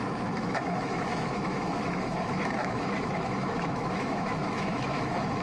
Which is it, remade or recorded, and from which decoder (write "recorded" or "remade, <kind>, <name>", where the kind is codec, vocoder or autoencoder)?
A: remade, autoencoder, DAC-VAE